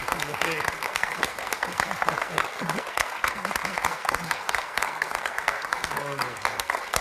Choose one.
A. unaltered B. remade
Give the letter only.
B